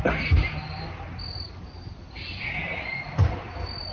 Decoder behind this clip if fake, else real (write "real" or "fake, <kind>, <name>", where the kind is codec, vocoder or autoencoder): real